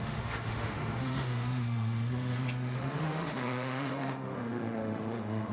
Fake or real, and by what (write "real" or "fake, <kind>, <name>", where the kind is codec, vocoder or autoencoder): fake, autoencoder, DAC-VAE